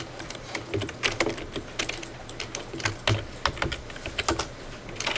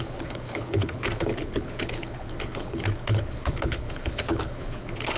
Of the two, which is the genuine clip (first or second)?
first